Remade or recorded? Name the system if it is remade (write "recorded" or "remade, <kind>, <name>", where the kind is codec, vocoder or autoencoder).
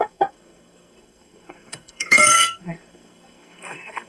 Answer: remade, codec, SNAC